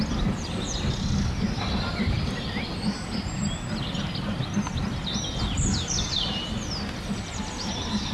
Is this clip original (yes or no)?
yes